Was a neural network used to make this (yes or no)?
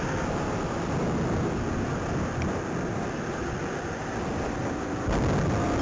no